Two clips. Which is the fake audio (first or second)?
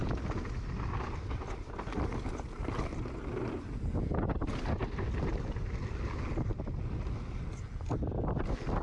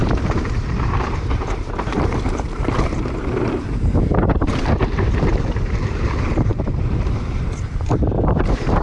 second